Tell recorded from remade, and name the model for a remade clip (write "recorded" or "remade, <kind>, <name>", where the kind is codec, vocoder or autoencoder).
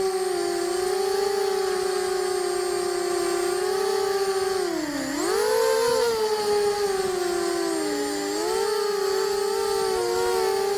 recorded